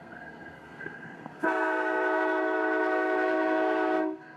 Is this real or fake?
fake